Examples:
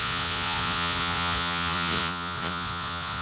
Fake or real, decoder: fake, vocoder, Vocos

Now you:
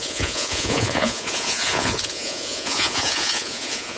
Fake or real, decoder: fake, vocoder, Vocos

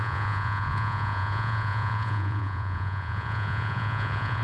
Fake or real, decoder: fake, vocoder, Vocos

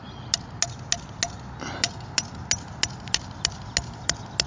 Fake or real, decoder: real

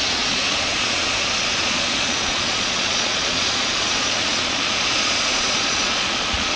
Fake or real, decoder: fake, vocoder, Vocos